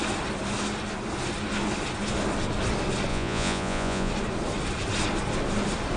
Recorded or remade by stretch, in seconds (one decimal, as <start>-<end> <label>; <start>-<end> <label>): 0.0-3.1 recorded; 3.1-4.1 remade; 4.1-6.0 recorded